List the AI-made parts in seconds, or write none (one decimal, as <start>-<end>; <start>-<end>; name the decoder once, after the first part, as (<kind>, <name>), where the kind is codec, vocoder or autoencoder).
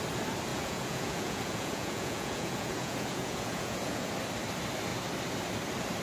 0.5-4.1 (vocoder, Vocos)